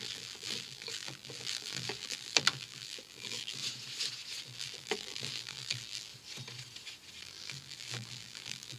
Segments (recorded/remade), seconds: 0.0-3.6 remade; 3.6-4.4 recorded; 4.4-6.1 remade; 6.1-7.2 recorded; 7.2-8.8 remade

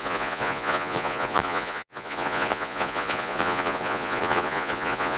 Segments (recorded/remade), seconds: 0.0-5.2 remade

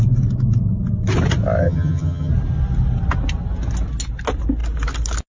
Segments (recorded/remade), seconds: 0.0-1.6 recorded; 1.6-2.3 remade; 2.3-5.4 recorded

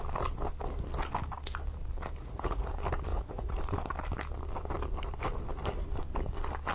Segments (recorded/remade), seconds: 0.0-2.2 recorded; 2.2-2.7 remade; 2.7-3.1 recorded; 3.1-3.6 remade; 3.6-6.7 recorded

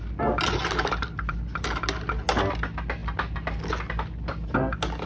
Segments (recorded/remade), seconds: 0.0-5.1 recorded

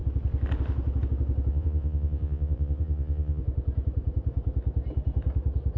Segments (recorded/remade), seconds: 0.0-1.5 recorded; 1.5-3.4 remade; 3.4-5.8 recorded